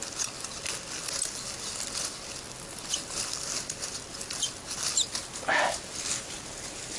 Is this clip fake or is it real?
real